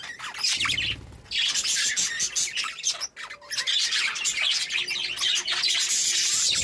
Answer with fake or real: real